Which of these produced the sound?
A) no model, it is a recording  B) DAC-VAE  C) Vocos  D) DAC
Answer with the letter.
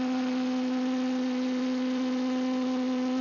A